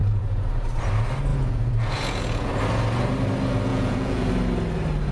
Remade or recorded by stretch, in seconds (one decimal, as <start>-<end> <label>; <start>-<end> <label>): 0.0-0.5 remade; 0.5-1.3 recorded; 1.3-2.5 remade; 2.5-3.7 recorded; 3.7-4.3 remade; 4.3-5.1 recorded